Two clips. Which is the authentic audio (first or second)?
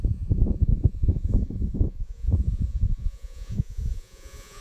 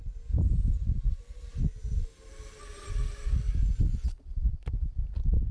second